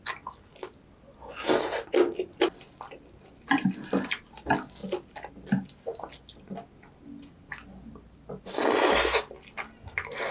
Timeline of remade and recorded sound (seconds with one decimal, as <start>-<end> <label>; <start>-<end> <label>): 0.0-10.3 recorded